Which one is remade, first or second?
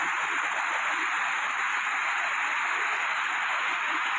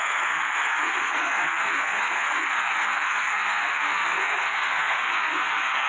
second